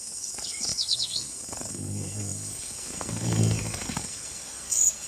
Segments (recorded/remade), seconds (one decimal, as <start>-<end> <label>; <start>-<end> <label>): 0.0-5.1 remade

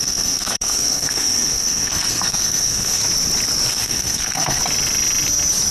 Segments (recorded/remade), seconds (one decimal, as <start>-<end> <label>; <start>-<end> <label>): 0.0-3.0 remade; 3.0-3.7 recorded; 3.7-4.6 remade; 4.6-5.7 recorded

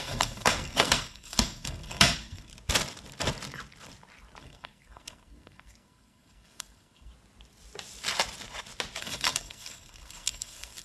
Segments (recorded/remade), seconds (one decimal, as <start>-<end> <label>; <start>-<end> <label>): 0.0-2.5 remade; 2.5-4.4 recorded; 4.4-7.1 remade; 7.1-9.0 recorded; 9.0-10.8 remade